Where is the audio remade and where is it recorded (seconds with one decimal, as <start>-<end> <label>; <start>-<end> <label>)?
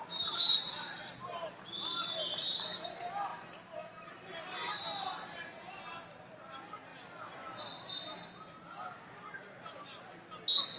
0.0-0.7 remade; 0.7-10.8 recorded